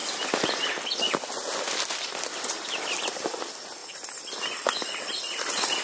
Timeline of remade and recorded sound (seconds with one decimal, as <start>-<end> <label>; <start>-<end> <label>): 0.0-1.8 recorded; 1.8-3.8 remade; 3.8-5.0 recorded; 5.0-5.8 remade

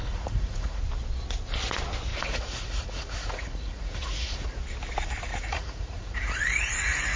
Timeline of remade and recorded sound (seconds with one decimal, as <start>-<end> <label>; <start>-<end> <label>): 0.0-0.8 remade; 0.8-2.1 recorded; 2.1-4.6 remade; 4.6-5.3 recorded; 5.3-7.2 remade

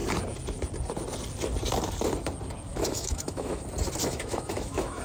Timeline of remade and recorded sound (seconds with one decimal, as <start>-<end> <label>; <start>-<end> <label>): 0.0-2.7 recorded; 2.7-3.6 remade; 3.6-4.0 recorded; 4.0-5.0 remade

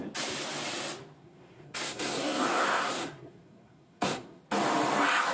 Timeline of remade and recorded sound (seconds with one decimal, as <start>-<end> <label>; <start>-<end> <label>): 0.0-1.2 recorded; 1.2-4.4 remade; 4.4-5.3 recorded

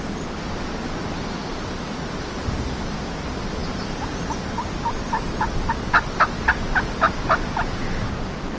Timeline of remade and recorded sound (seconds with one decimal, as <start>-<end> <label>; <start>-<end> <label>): 0.0-3.6 recorded; 3.6-4.3 remade; 4.3-8.6 recorded

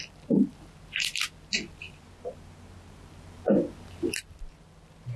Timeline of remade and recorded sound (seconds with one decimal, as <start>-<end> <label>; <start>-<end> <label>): 0.0-5.2 recorded

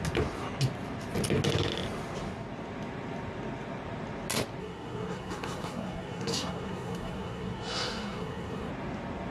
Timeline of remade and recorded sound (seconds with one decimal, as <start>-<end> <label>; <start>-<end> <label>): 0.0-4.6 recorded; 4.6-8.7 remade; 8.7-9.3 recorded